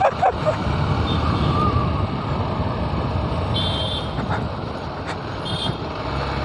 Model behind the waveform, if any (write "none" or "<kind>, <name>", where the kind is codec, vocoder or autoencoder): none